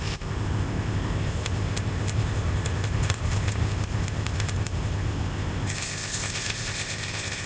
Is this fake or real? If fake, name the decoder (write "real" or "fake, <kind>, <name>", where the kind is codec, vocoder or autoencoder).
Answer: fake, codec, ZipCodec